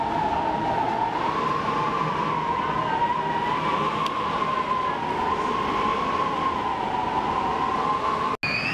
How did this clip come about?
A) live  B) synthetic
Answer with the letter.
A